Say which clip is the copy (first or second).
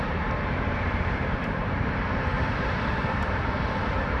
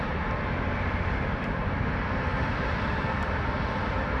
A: first